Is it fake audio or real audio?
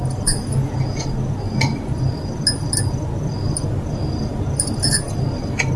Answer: real